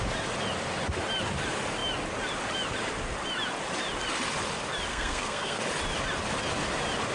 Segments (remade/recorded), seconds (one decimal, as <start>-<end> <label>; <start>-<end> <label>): 0.0-4.9 recorded; 4.9-5.6 remade; 5.6-7.1 recorded